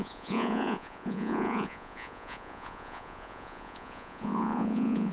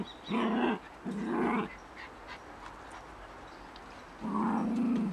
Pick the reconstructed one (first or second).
first